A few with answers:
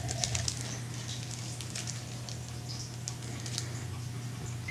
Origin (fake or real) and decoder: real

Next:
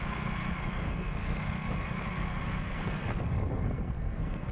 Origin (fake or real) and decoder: fake, codec, SNAC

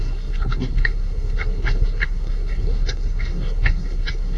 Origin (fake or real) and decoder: fake, codec, SNAC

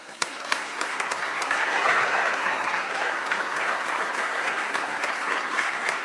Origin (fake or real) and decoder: fake, codec, SNAC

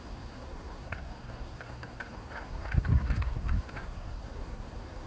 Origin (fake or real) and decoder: fake, codec, SNAC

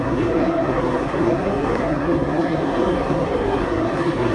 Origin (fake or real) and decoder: fake, codec, SNAC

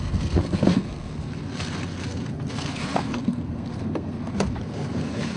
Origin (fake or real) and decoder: fake, codec, SNAC